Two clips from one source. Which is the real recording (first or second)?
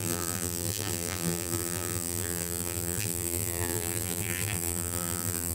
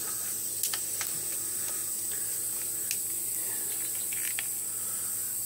second